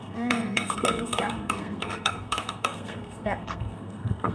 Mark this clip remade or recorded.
remade